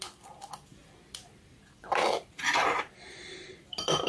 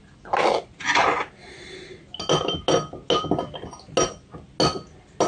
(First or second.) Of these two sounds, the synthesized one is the first